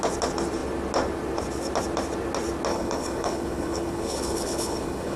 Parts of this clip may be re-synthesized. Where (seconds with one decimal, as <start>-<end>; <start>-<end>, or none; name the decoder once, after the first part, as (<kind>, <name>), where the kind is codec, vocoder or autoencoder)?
2.7-5.2 (codec, HILCodec)